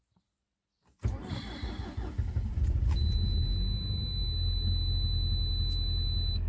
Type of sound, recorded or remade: recorded